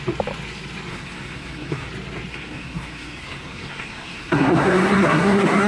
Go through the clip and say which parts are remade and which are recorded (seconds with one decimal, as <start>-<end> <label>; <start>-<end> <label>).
0.0-0.9 recorded; 0.9-1.9 remade; 1.9-2.3 recorded; 2.3-5.7 remade